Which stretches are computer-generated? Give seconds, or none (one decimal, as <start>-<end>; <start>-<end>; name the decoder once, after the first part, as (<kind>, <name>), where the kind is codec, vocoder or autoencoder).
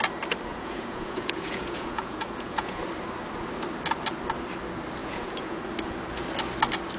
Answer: 0.5-2.8 (vocoder, Vocos); 5.0-5.6